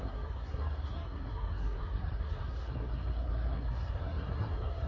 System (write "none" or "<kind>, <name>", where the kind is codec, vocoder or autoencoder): codec, SNAC